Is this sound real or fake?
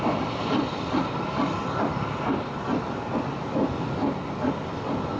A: real